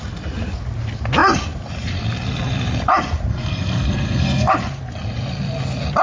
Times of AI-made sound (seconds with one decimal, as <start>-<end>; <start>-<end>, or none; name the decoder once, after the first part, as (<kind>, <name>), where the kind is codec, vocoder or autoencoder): 3.3-4.5 (codec, SNAC)